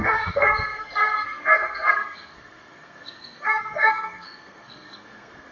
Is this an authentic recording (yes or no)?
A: no